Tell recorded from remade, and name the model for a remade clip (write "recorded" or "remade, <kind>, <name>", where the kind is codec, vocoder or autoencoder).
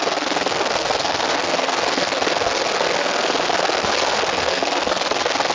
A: remade, codec, SNAC